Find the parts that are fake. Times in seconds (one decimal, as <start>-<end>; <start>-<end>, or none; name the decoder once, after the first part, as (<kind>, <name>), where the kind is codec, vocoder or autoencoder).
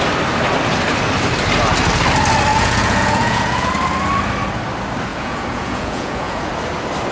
2.5-3.7 (vocoder, Vocos); 5.1-6.5